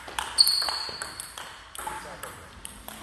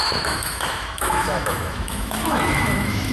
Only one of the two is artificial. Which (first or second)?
second